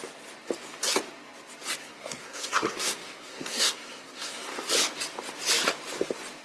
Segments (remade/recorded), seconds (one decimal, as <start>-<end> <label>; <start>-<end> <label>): 0.0-1.8 recorded; 1.8-4.7 remade; 4.7-6.4 recorded